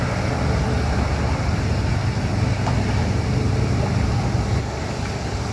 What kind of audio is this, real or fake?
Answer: real